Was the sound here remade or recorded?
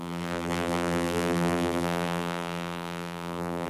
remade